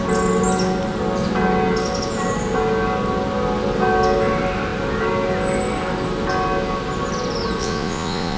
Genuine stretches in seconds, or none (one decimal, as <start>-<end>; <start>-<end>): 0.0-7.6